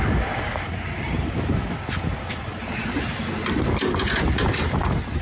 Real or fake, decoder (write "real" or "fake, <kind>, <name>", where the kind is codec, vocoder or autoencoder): real